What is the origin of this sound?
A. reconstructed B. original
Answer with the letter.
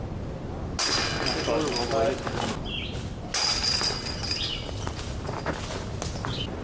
B